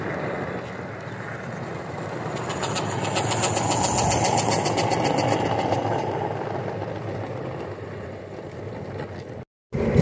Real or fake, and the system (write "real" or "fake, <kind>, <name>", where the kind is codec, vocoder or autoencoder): real